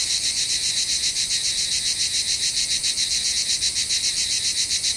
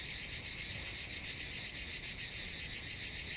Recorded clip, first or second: first